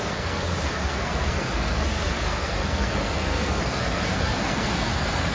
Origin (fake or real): fake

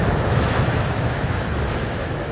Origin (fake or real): fake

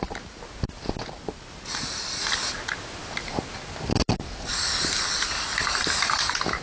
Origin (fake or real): real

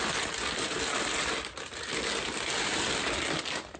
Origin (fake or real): real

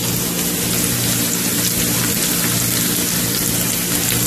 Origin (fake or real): real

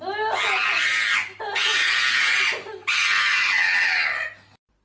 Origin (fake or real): real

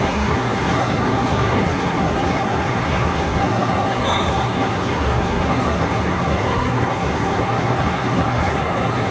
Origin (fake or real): fake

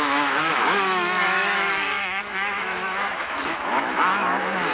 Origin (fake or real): fake